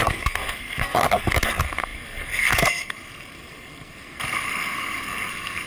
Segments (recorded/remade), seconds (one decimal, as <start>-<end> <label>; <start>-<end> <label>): 0.0-5.7 remade